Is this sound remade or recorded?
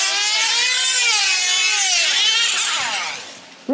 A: recorded